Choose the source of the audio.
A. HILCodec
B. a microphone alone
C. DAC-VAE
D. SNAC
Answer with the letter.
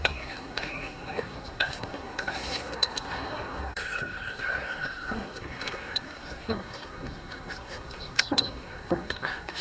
D